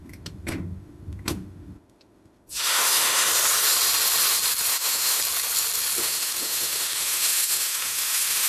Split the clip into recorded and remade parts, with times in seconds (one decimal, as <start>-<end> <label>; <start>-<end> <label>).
0.0-3.3 remade; 3.3-4.7 recorded; 4.7-5.2 remade; 5.2-6.0 recorded; 6.0-8.5 remade